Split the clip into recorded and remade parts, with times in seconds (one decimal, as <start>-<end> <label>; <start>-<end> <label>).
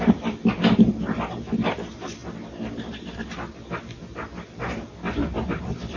0.0-6.0 recorded